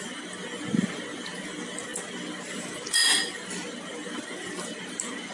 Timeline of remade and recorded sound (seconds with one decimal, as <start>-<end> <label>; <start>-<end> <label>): 0.0-5.3 recorded